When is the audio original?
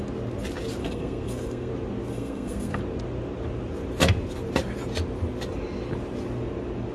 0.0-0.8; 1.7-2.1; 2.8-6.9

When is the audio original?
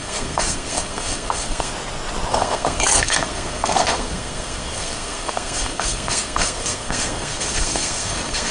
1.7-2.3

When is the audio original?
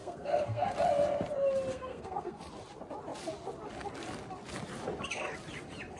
0.7-1.7; 2.4-6.0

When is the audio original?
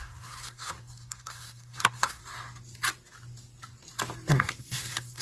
2.2-4.3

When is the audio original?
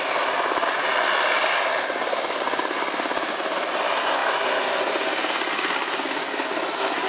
0.0-7.1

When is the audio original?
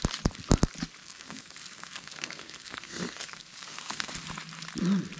0.0-1.0; 4.1-5.2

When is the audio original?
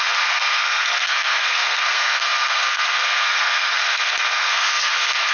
none